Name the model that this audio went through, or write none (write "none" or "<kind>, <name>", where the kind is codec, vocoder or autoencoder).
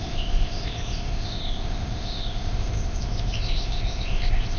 codec, ZipCodec